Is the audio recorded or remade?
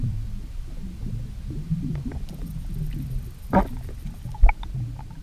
remade